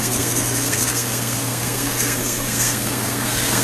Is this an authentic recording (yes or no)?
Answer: no